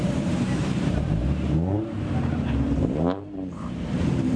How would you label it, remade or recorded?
remade